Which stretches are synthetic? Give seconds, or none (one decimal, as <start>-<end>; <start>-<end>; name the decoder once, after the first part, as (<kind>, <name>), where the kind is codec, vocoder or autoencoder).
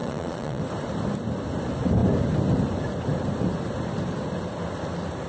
0.0-0.6 (vocoder, Vocos)